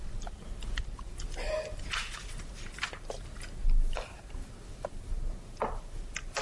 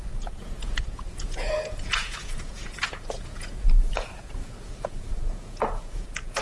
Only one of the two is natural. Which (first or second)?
first